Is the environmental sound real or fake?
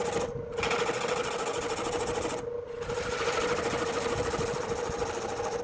real